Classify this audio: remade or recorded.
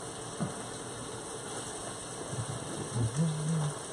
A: recorded